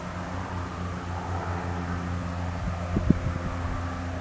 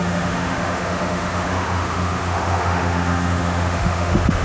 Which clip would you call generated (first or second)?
second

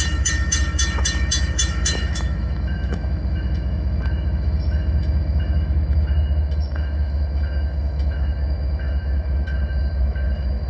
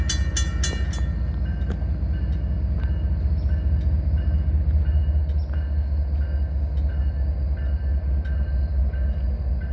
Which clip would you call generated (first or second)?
first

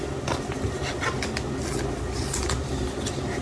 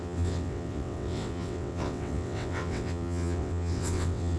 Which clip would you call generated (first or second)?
second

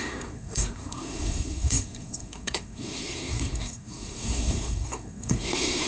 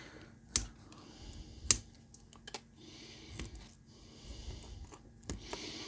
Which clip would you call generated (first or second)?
first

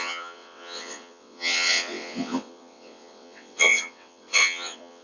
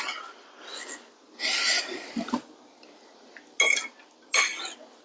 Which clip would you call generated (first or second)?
first